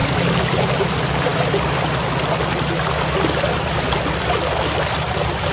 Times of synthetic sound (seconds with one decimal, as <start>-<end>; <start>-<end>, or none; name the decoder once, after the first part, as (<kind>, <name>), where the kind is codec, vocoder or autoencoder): none